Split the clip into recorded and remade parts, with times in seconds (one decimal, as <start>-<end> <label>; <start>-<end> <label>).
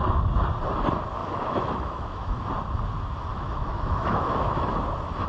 0.0-1.2 recorded; 1.2-2.5 remade; 2.5-3.3 recorded; 3.3-4.7 remade; 4.7-5.3 recorded